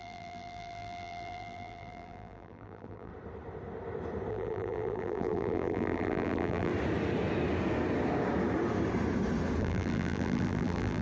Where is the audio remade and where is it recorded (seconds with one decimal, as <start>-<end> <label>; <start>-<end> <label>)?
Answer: 0.0-3.1 remade; 3.1-4.3 recorded; 4.3-6.7 remade; 6.7-9.6 recorded; 9.6-11.0 remade